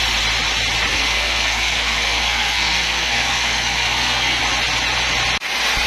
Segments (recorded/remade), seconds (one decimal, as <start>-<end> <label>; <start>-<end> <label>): 0.0-0.9 recorded; 0.9-4.4 remade; 4.4-5.9 recorded